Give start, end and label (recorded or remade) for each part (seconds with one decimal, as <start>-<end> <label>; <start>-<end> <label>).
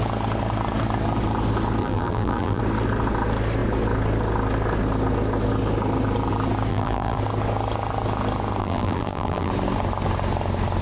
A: 0.0-1.8 recorded; 1.8-2.6 remade; 2.6-6.7 recorded; 6.7-7.2 remade; 7.2-8.6 recorded; 8.6-9.5 remade; 9.5-10.8 recorded